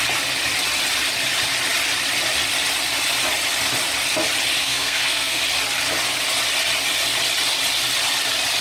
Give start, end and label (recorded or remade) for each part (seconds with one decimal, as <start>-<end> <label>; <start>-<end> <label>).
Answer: 0.0-4.6 recorded; 4.6-5.4 remade; 5.4-8.6 recorded